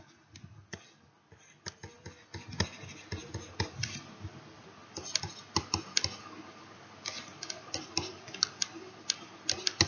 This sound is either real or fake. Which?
real